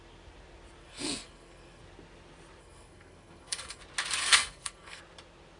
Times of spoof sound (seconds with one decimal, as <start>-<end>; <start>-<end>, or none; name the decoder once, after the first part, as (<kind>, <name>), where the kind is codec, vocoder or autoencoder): 0.8-1.8 (codec, SNAC); 2.6-3.8; 4.2-5.0